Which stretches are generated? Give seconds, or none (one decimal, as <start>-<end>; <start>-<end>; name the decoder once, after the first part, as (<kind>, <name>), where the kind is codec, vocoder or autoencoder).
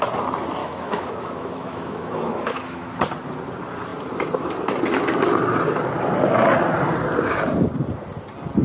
0.6-2.9 (autoencoder, DAC-VAE)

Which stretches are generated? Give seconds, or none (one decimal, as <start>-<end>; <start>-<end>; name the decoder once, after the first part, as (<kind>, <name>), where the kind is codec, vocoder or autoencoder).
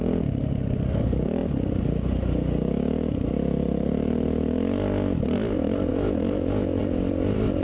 5.9-6.8 (autoencoder, DAC-VAE)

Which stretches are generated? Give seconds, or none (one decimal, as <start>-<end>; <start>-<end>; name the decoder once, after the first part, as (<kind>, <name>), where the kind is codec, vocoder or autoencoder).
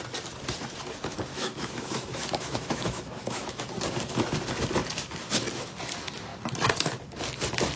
1.3-3.7 (autoencoder, DAC-VAE)